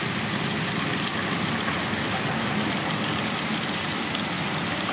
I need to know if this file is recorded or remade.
recorded